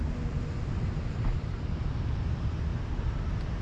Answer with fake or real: fake